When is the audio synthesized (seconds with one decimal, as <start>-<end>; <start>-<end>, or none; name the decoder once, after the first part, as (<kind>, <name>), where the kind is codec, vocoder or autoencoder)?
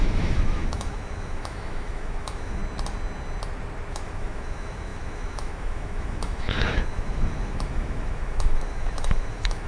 0.0-2.6 (autoencoder, DAC-VAE); 3.9-9.7